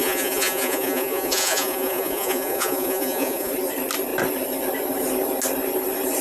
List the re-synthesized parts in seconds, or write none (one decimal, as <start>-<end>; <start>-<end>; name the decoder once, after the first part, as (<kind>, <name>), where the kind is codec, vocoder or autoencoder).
0.0-3.5 (vocoder, Vocos)